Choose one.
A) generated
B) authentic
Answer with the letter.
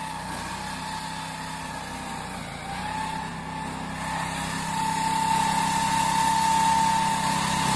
B